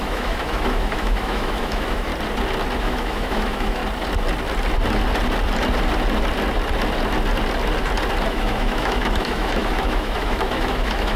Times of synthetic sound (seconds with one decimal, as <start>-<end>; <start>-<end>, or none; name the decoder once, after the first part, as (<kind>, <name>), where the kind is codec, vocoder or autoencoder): 0.0-2.1 (autoencoder, DAC-VAE); 2.8-3.8; 8.3-11.2